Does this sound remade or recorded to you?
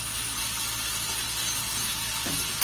recorded